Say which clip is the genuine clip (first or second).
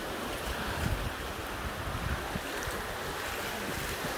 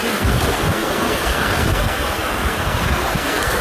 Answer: first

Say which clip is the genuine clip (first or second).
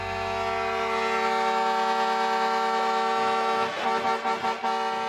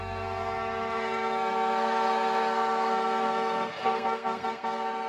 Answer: first